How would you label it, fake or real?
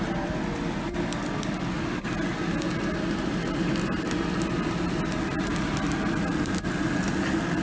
real